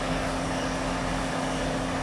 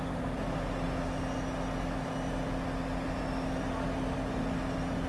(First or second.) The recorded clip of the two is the second